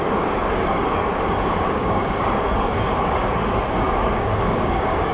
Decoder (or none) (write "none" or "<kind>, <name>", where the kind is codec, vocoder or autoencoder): codec, DAC